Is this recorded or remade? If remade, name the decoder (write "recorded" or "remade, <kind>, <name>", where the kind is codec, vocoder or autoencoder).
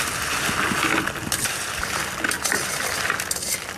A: recorded